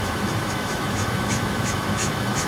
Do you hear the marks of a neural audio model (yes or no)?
yes